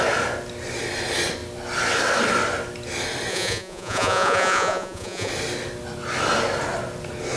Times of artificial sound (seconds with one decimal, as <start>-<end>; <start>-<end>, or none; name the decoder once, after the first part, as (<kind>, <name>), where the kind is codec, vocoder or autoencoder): 3.3-5.3 (vocoder, Vocos)